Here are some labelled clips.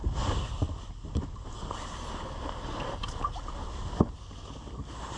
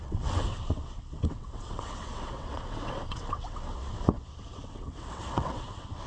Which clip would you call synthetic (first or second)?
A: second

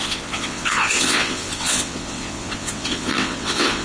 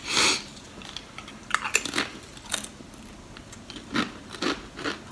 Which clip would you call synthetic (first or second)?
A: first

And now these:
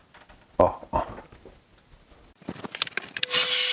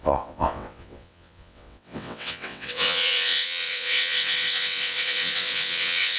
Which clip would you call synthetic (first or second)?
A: second